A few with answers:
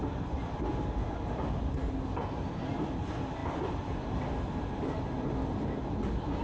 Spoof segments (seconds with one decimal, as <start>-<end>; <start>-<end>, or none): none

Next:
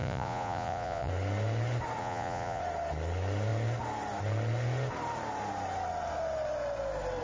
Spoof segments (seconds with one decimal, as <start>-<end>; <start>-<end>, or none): 0.0-1.1; 2.0-2.6

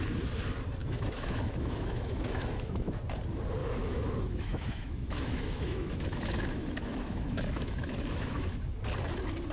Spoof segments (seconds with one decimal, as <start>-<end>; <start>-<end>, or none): 0.8-3.0; 3.6-8.6

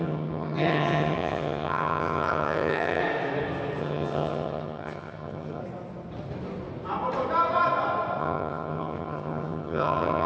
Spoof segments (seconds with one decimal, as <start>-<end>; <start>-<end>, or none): 0.0-3.0; 3.8-5.6; 8.2-10.3

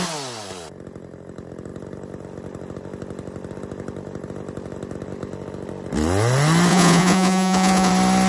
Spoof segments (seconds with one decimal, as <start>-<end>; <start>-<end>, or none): 6.7-7.9

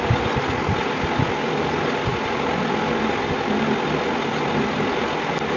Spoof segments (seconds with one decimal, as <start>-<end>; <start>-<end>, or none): none